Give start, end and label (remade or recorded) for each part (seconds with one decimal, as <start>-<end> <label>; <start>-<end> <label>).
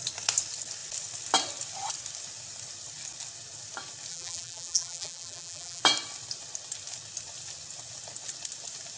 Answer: 0.0-4.1 recorded; 4.1-5.8 remade; 5.8-9.0 recorded